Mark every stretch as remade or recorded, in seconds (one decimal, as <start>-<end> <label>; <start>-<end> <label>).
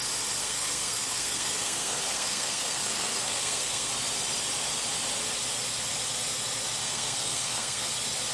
0.0-0.4 recorded; 0.4-3.9 remade; 3.9-6.8 recorded; 6.8-7.9 remade; 7.9-8.3 recorded